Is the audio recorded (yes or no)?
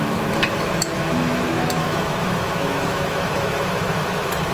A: no